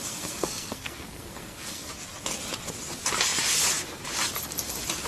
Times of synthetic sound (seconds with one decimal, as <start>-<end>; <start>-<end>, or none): 0.0-1.9